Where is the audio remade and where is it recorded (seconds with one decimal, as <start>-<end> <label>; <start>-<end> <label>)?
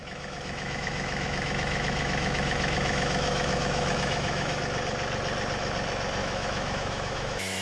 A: 0.0-4.6 remade; 4.6-6.2 recorded; 6.2-7.6 remade